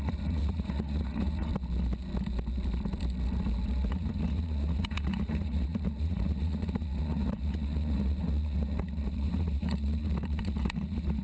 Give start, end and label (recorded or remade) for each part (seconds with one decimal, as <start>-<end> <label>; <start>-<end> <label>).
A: 0.0-1.5 remade; 1.5-3.9 recorded; 3.9-11.2 remade